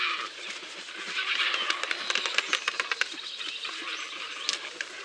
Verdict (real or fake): real